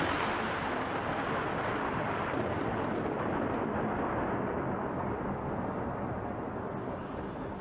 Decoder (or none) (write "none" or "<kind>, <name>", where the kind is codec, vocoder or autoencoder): none